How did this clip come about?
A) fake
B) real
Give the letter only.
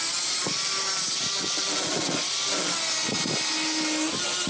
B